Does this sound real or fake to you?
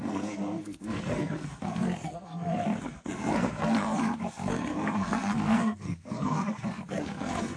fake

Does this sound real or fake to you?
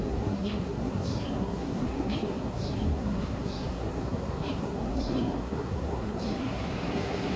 fake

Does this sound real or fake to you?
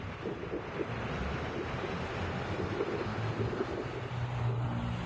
real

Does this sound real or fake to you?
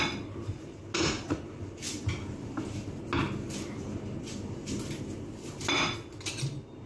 real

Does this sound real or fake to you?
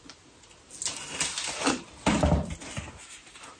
real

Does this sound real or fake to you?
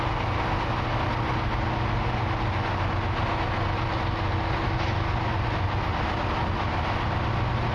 real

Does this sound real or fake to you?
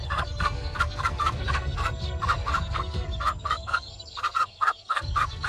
fake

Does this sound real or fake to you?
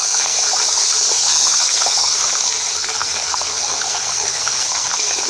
fake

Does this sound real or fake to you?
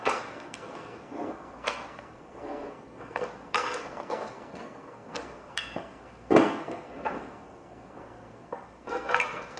fake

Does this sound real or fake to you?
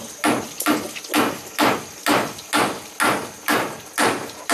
real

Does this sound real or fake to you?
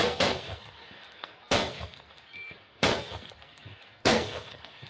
fake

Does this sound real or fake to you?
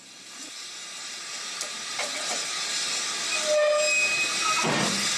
real